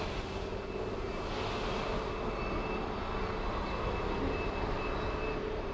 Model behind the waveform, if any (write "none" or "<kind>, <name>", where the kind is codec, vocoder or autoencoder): none